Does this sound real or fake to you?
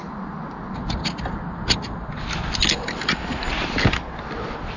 real